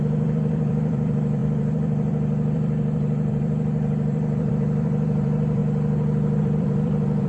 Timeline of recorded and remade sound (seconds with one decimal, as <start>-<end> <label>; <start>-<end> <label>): 0.0-5.6 remade; 5.6-6.4 recorded; 6.4-7.3 remade